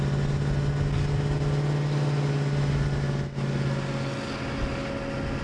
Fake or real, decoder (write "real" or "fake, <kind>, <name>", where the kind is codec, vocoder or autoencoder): real